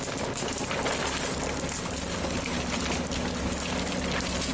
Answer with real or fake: real